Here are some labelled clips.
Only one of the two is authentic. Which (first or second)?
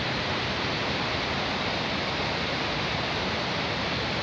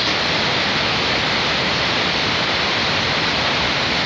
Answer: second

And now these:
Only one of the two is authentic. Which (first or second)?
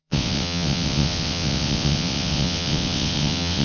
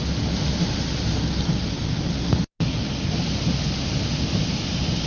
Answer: second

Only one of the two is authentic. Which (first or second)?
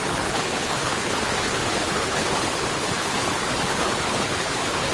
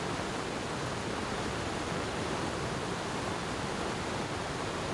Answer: second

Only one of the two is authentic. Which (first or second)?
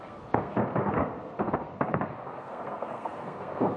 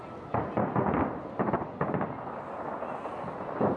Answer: second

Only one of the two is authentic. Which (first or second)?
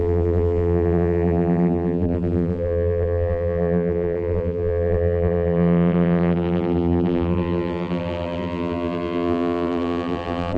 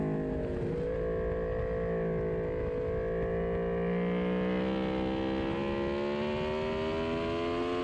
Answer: second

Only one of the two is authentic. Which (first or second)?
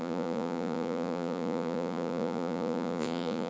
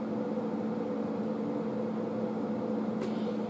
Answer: second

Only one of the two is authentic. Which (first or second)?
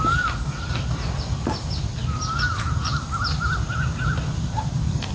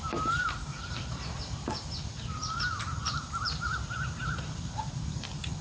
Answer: first